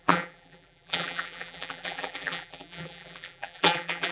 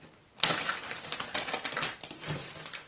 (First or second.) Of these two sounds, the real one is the second